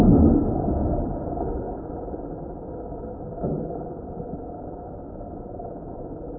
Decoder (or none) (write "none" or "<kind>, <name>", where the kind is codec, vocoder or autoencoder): none